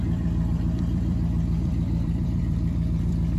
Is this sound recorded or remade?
remade